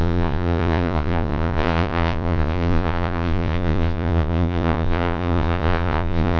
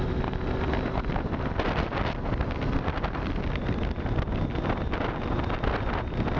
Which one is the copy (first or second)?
first